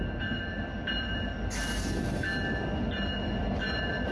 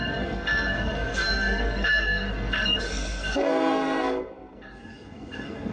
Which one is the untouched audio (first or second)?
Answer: first